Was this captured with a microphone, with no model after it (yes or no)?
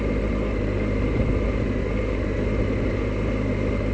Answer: yes